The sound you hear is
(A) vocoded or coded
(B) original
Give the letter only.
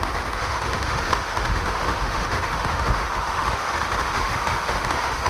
A